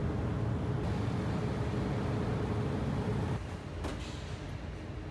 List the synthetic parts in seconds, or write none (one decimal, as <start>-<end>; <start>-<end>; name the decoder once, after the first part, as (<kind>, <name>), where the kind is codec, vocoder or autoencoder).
none